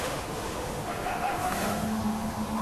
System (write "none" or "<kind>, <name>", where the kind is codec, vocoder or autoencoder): autoencoder, DAC-VAE